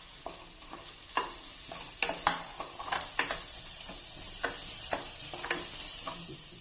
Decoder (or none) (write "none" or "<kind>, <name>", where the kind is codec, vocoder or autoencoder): none